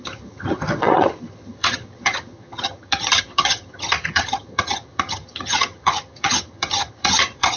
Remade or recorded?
remade